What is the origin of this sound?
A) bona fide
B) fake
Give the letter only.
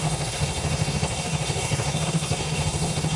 B